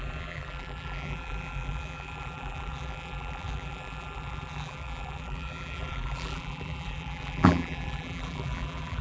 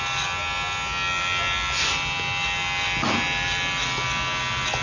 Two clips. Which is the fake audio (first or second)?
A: first